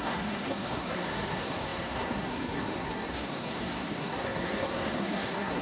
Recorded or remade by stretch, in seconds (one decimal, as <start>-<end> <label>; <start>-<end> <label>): 0.0-5.6 remade